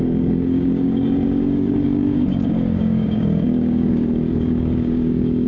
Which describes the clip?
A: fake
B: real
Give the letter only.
A